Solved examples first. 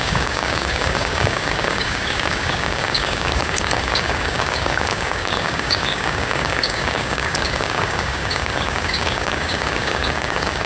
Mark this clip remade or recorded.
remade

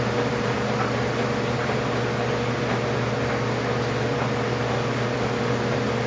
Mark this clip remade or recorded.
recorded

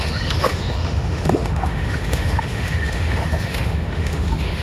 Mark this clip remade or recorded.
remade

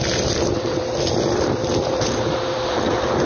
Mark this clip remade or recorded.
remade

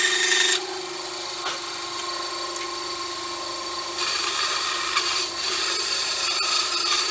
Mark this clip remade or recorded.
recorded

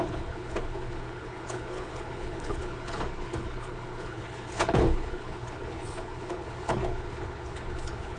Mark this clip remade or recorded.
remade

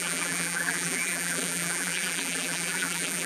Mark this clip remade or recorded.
remade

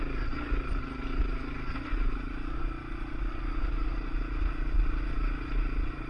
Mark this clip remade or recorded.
recorded